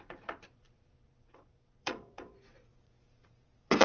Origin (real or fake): fake